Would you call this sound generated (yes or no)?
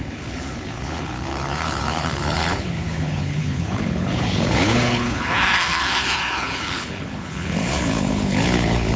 yes